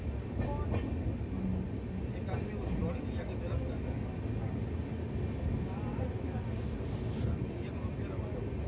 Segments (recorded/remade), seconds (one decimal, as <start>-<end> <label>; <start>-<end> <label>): 0.0-8.7 recorded